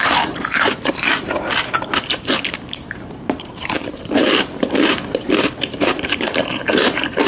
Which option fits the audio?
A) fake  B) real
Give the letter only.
A